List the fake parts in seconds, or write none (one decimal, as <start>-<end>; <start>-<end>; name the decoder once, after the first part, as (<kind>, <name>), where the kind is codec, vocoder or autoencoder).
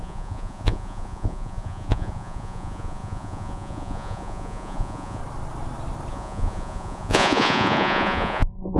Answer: 0.0-5.2 (vocoder, Vocos); 6.1-8.8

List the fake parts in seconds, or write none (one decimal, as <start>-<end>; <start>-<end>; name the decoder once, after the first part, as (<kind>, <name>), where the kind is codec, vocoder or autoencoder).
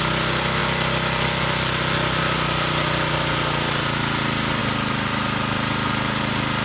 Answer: none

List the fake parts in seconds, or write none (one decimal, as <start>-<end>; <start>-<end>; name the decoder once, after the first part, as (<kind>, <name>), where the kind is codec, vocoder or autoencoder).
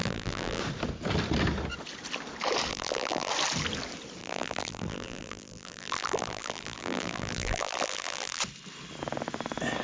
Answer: 0.0-0.6 (vocoder, BigVGAN v2); 2.7-3.3; 4.2-8.4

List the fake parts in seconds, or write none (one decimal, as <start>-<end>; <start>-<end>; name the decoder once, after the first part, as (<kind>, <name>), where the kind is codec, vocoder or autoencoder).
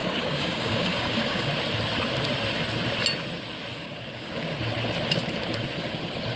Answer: 0.0-1.5 (codec, DAC); 3.7-4.3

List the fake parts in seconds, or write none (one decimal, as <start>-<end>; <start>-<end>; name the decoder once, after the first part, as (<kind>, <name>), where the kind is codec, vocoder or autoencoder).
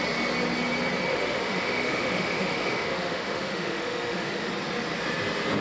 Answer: 1.1-4.5 (autoencoder, DAC-VAE)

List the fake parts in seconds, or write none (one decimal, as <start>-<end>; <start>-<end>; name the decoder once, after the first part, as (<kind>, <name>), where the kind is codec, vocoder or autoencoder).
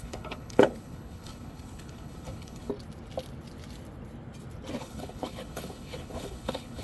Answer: 0.0-2.7 (codec, HILCodec); 4.8-6.8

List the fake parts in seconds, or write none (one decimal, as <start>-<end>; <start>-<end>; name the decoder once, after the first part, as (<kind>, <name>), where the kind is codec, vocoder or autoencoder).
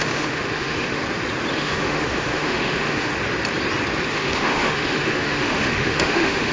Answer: 0.0-1.0 (autoencoder, DAC-VAE); 1.5-3.1; 4.1-6.5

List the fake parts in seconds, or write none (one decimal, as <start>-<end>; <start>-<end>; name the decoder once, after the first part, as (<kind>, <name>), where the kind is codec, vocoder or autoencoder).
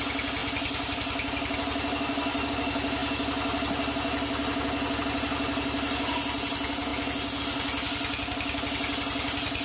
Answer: none